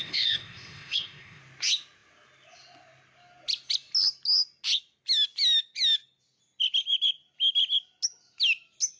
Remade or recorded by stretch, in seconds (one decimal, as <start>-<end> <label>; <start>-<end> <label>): 0.0-1.4 remade; 1.4-9.0 recorded